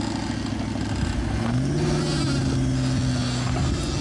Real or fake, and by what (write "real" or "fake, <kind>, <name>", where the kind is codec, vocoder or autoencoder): real